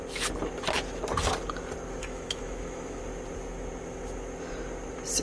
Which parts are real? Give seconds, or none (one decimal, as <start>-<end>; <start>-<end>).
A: 0.0-2.0; 3.0-5.2